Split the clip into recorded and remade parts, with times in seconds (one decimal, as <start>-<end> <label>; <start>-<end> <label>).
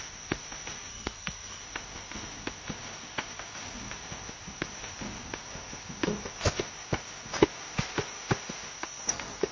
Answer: 0.0-0.9 recorded; 0.9-1.6 remade; 1.6-9.5 recorded